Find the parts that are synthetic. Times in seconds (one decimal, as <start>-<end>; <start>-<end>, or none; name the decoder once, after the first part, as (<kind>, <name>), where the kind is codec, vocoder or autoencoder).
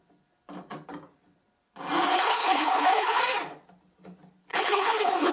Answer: 2.1-3.2 (codec, HILCodec); 4.5-5.3